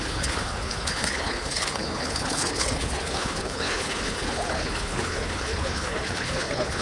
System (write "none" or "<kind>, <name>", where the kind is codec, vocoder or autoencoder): codec, HILCodec